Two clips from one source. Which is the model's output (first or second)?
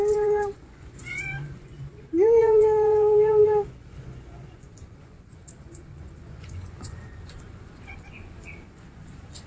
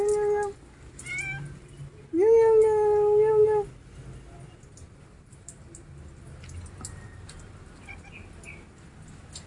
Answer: first